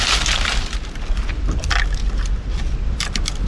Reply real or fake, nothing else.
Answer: real